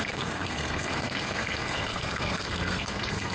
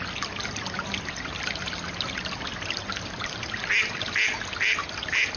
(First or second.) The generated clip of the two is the first